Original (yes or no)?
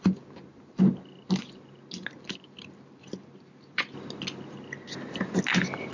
yes